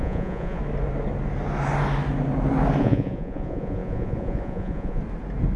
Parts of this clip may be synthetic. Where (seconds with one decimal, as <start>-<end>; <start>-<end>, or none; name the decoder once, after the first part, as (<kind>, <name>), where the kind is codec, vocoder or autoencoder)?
0.0-0.6 (vocoder, Vocos); 2.8-5.0